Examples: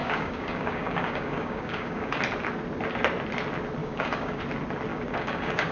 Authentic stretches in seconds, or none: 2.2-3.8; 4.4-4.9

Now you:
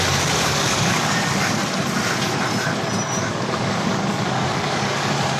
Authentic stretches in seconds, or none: 1.6-3.2

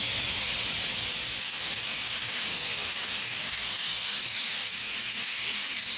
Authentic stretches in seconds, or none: 0.5-1.4

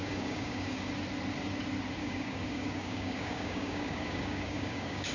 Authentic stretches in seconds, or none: 0.8-2.0

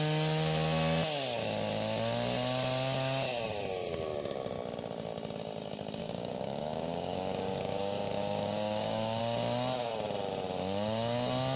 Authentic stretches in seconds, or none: 0.0-6.0; 9.2-11.6

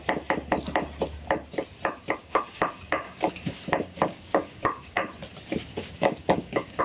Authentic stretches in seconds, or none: 0.0-2.2; 5.1-5.7

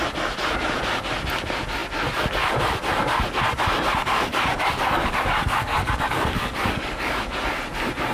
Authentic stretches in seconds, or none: 0.0-4.0; 7.3-8.1